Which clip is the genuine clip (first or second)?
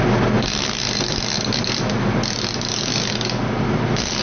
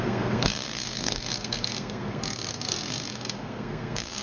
first